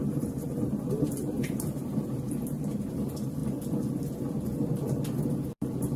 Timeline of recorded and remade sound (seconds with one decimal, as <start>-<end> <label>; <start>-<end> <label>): 0.0-3.4 remade; 3.4-5.3 recorded; 5.3-6.0 remade

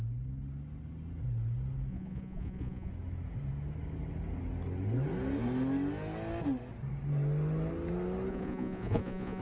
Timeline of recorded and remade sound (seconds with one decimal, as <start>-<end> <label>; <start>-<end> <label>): 0.0-1.9 recorded; 1.9-2.9 remade; 2.9-8.3 recorded; 8.3-9.4 remade

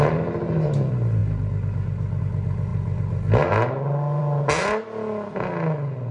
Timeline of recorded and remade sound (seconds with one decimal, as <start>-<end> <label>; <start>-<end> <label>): 0.0-6.1 recorded